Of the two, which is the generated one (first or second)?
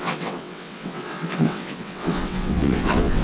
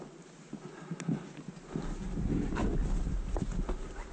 first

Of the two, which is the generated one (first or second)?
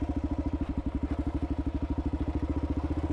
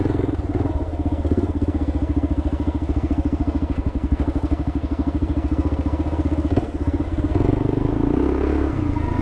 second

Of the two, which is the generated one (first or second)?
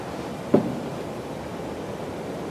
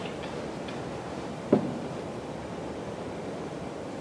second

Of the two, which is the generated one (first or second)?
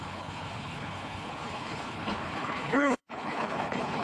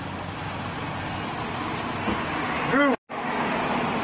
first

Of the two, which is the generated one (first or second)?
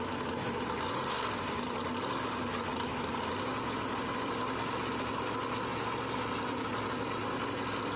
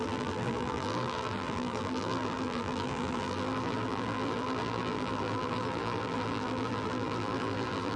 second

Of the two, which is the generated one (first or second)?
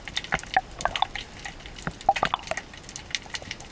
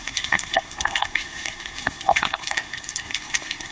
second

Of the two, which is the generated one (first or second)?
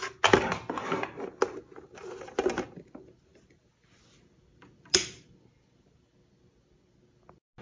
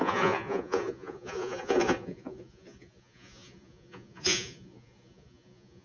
second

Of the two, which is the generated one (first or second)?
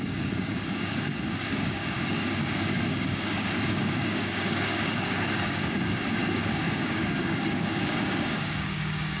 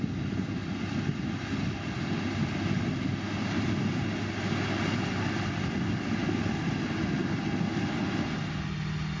first